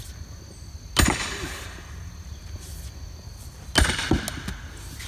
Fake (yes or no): no